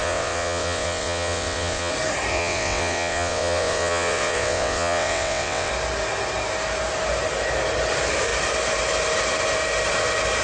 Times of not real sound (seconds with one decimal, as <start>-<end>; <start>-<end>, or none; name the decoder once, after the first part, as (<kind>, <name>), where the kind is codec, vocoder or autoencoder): 0.0-1.9 (vocoder, WaveNeXt); 2.3-5.7